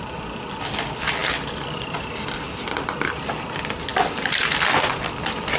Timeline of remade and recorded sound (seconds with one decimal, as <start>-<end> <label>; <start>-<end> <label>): 0.0-1.2 recorded; 1.2-3.1 remade; 3.1-5.6 recorded